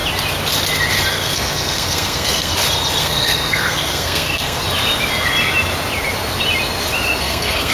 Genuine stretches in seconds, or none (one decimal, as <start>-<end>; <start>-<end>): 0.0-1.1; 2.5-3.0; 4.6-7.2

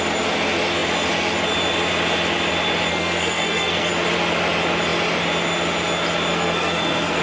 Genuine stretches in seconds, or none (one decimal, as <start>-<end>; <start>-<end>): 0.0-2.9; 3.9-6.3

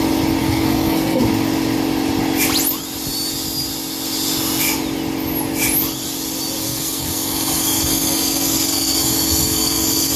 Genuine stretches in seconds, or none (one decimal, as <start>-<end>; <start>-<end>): 0.0-0.4; 1.2-6.6